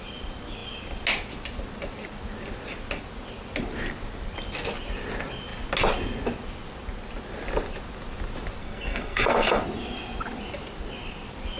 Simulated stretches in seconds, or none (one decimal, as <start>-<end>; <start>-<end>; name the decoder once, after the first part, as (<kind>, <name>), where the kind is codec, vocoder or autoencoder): 8.6-9.6 (codec, SNAC)